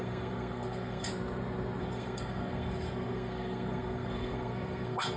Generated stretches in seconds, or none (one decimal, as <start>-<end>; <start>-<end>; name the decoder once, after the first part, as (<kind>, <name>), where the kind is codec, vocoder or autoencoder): 0.0-1.1 (codec, SNAC); 1.8-5.2